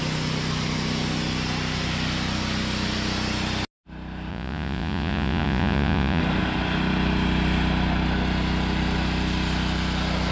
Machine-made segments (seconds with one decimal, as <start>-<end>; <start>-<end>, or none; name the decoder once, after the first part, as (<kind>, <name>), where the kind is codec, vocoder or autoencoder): 4.3-6.2 (vocoder, Vocos)